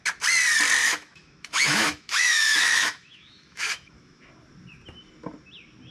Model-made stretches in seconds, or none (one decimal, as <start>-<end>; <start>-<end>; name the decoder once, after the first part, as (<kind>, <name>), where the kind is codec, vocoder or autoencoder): 0.8-4.3 (autoencoder, DAC-VAE)